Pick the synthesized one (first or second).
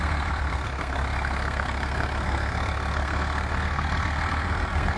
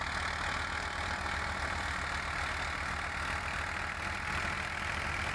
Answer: first